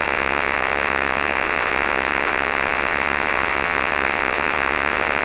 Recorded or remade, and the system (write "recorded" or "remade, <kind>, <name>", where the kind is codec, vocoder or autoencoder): remade, vocoder, WaveNeXt